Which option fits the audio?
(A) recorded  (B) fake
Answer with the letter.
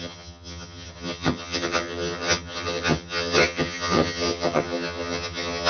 B